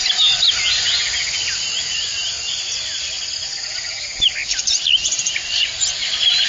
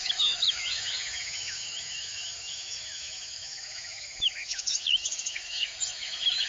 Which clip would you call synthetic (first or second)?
second